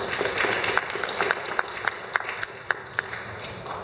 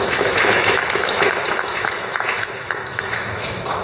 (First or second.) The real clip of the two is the first